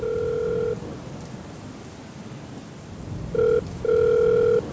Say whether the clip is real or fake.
real